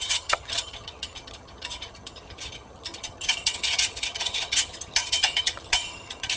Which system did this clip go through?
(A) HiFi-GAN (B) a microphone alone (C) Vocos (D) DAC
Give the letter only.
A